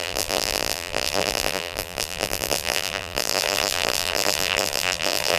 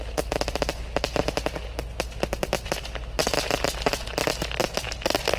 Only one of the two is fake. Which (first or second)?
first